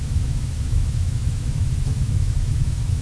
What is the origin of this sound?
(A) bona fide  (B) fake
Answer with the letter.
B